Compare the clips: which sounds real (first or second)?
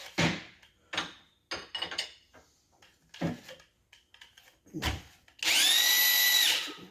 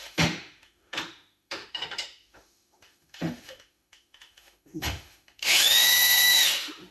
first